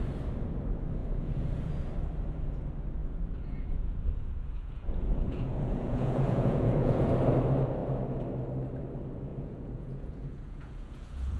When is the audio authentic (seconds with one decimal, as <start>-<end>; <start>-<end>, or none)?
0.0-1.0; 1.7-3.0; 7.1-9.3

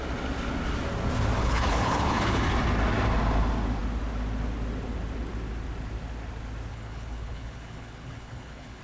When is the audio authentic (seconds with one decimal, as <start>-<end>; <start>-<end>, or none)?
0.0-1.4; 2.4-6.7

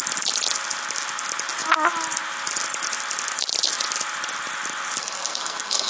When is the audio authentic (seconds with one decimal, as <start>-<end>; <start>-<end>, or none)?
0.0-5.0

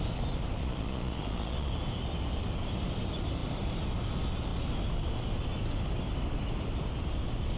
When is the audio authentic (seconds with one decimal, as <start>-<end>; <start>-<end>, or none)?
0.0-0.6; 1.7-7.6